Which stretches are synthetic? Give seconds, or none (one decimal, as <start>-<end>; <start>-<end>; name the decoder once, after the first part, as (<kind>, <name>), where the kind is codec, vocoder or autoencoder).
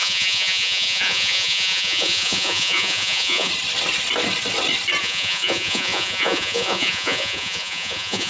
0.0-3.5 (vocoder, Vocos); 5.0-8.3